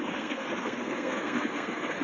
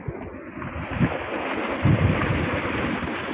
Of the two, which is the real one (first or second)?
second